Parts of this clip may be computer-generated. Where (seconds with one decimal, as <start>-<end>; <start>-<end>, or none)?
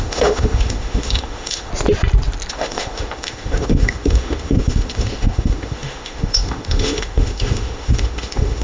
0.0-1.7; 2.5-8.6